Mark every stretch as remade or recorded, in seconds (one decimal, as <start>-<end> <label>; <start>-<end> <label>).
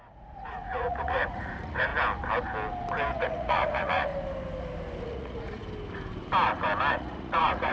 0.0-1.9 remade; 1.9-3.1 recorded; 3.1-4.1 remade; 4.1-5.0 recorded; 5.0-5.6 remade; 5.6-6.9 recorded; 6.9-7.7 remade